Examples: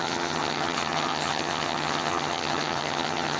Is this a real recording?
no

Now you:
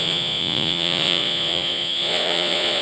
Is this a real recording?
no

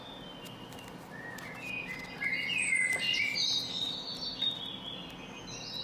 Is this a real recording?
yes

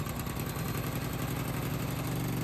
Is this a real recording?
yes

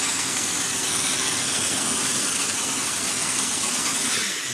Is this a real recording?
no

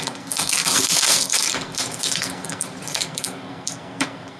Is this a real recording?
no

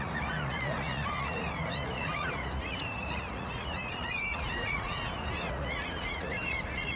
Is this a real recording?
no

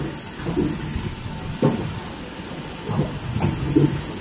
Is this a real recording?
yes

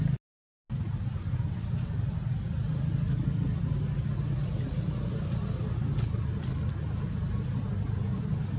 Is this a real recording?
yes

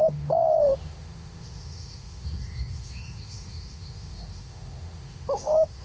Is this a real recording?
no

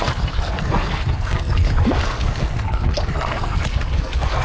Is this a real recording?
no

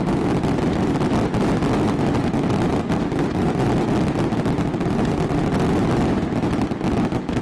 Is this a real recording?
yes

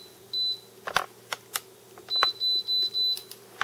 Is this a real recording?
yes